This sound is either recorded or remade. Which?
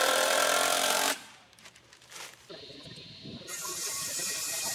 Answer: remade